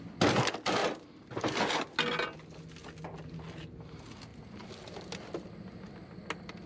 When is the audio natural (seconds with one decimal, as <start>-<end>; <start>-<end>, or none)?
0.0-0.8; 1.7-6.7